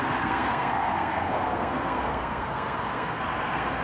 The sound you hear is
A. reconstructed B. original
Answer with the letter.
A